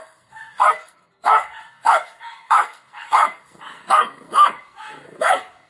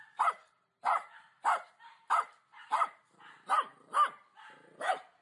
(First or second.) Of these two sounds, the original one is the second